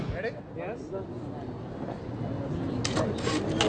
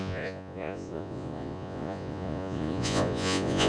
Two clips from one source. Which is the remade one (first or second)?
second